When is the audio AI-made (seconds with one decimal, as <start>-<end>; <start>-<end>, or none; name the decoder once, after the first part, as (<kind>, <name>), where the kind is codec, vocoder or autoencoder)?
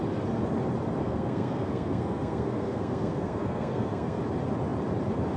1.0-4.2 (codec, SNAC)